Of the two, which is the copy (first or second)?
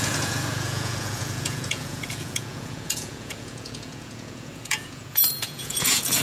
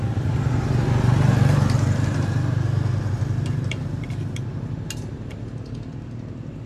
first